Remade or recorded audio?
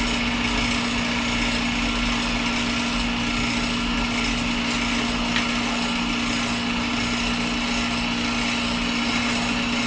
recorded